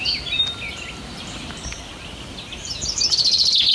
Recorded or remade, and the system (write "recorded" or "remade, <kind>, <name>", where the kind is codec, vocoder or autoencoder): recorded